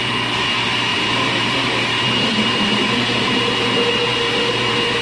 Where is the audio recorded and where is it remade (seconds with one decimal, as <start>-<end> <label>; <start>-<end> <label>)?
0.0-0.9 recorded; 0.9-3.4 remade; 3.4-5.0 recorded